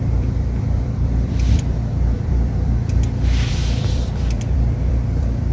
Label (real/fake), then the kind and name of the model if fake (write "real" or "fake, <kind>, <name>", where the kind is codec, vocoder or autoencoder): fake, vocoder, BigVGAN v2